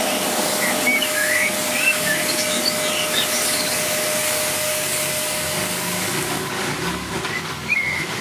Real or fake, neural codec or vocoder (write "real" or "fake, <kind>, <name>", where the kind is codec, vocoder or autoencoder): fake, codec, DAC